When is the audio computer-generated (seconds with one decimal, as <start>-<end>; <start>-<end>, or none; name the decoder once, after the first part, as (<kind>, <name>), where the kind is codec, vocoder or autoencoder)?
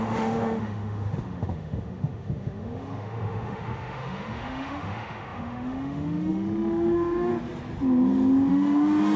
0.0-7.3 (autoencoder, DAC-VAE); 8.5-9.2